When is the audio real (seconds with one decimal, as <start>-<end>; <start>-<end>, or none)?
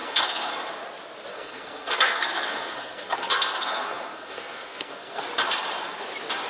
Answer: 0.5-1.3; 5.2-6.5